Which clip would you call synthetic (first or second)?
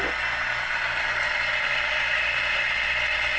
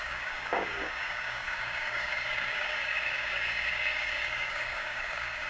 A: second